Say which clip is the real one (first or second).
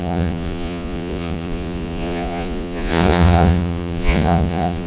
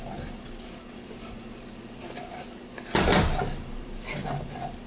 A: second